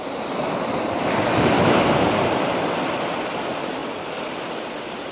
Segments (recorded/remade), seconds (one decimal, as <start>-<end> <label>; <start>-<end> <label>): 0.0-5.1 recorded